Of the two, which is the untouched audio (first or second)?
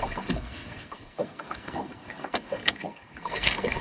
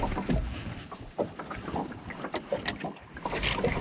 second